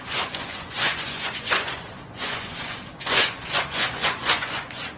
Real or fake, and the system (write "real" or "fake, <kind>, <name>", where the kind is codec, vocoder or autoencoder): fake, vocoder, Vocos